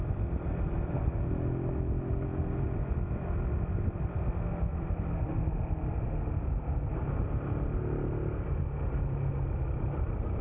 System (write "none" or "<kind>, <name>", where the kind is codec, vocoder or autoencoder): none